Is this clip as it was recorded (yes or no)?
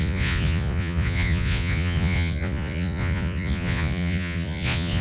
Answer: no